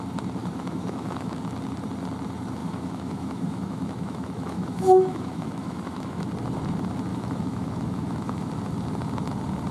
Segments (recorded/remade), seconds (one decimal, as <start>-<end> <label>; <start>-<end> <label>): 0.0-0.4 recorded; 0.4-1.3 remade; 1.3-2.6 recorded; 2.6-6.3 remade; 6.3-7.1 recorded; 7.1-8.5 remade; 8.5-9.7 recorded